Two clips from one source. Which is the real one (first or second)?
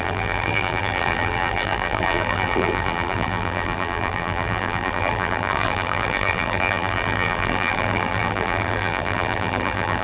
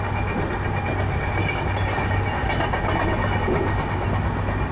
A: second